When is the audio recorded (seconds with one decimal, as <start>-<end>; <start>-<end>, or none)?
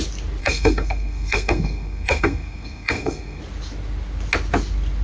0.0-0.4; 3.4-5.0